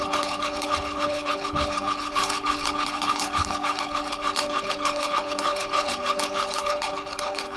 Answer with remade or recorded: remade